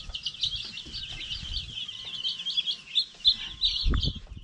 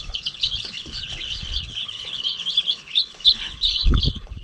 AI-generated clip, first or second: second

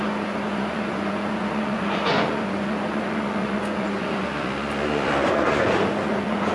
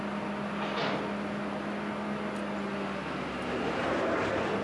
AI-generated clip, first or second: first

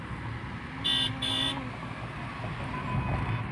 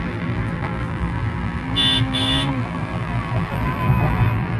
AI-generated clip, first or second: second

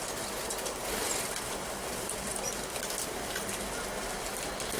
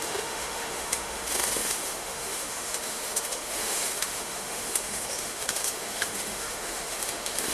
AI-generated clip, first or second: second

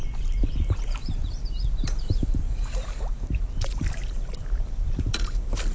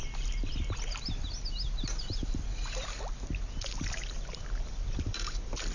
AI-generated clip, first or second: first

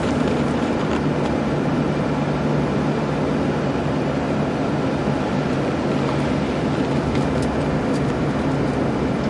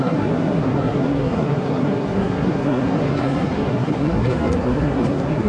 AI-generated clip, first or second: second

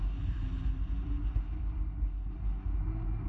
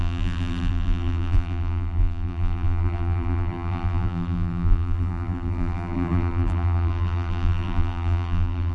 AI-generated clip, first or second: second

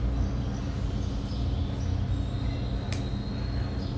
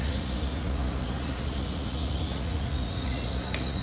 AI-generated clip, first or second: second